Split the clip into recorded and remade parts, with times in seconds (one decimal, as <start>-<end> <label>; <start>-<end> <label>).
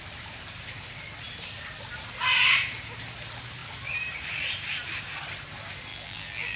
0.0-5.9 recorded; 5.9-6.6 remade